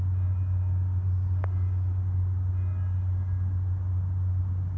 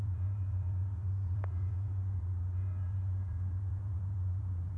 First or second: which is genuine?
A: first